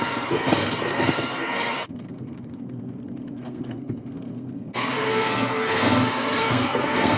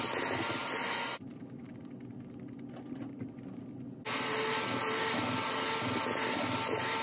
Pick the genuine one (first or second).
second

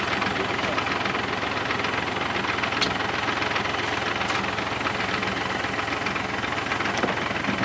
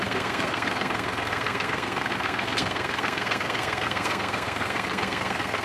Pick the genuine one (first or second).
first